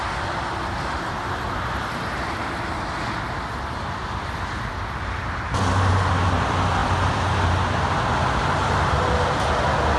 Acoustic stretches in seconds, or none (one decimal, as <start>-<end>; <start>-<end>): 0.0-10.0